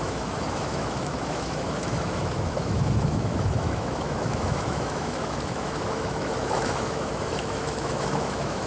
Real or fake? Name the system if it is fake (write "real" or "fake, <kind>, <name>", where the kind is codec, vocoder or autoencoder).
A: fake, autoencoder, DAC-VAE